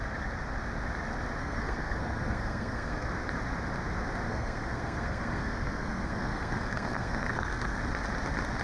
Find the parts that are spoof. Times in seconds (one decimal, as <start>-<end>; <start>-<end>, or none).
1.4-3.1; 4.3-7.8